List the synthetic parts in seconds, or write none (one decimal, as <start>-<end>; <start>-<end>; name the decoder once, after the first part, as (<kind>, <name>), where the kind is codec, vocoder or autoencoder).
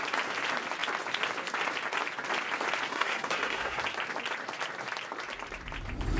2.9-3.8 (codec, SNAC)